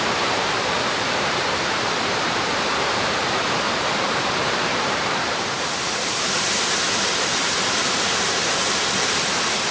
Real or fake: fake